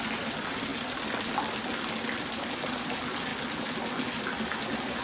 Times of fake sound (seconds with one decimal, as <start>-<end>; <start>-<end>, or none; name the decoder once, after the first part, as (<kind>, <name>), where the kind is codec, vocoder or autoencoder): none